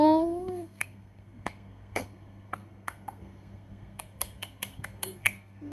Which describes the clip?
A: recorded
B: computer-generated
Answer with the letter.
B